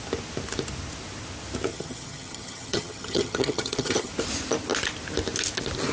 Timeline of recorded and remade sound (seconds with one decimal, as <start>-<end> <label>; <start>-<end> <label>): 0.0-1.7 recorded; 1.7-4.1 remade; 4.1-5.9 recorded